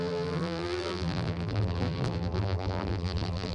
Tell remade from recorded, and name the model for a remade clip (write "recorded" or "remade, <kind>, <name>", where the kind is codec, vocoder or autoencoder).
remade, vocoder, BigVGAN v2